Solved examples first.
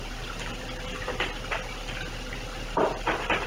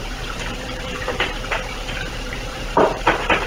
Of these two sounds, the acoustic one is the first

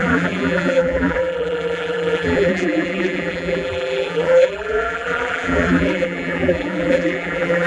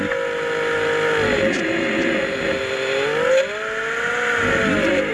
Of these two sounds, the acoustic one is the second